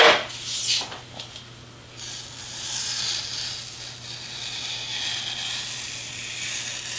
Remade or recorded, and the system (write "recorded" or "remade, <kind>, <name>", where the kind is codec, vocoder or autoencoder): recorded